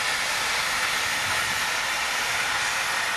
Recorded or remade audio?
recorded